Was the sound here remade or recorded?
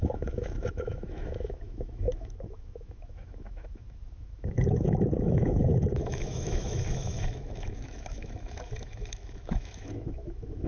remade